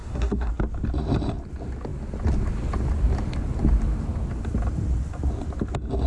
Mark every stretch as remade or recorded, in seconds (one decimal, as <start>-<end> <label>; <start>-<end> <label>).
0.0-0.5 remade; 0.5-6.1 recorded